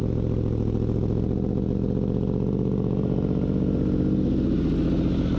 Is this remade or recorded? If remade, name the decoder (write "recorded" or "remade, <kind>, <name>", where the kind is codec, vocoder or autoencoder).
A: recorded